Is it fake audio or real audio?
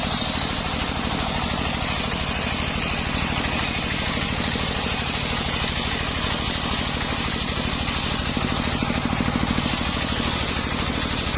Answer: real